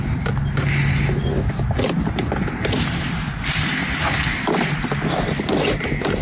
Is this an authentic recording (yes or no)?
yes